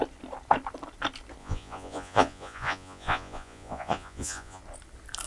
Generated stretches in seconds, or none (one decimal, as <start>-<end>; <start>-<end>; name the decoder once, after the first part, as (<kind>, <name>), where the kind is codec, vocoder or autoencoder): 1.4-4.6 (vocoder, Vocos)